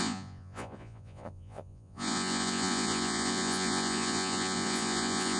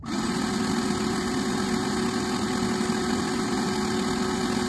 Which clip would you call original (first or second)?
second